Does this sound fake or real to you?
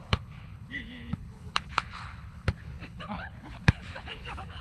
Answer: fake